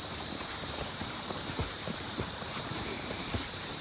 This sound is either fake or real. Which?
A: fake